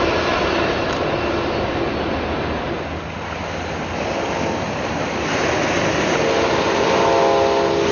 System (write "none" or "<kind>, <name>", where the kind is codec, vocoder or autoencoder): none